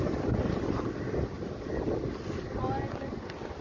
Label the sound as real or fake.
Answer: real